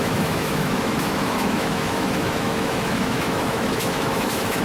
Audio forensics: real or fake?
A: fake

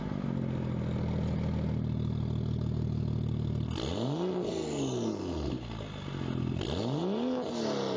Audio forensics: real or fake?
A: real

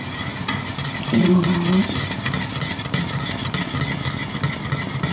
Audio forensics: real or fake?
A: real